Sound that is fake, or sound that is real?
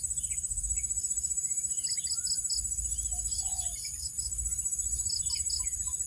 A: real